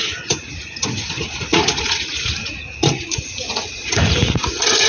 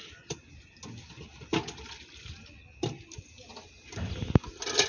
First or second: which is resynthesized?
first